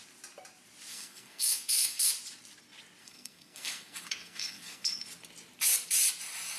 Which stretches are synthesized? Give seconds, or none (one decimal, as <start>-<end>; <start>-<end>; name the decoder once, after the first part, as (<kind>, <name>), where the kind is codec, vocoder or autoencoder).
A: 0.9-2.1 (codec, SNAC); 3.0-5.0